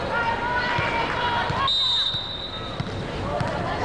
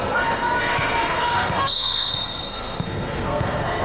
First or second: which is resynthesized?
second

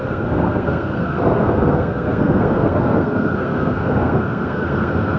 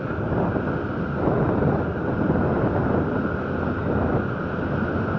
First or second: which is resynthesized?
first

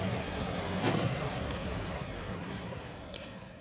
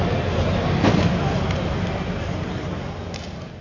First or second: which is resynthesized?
first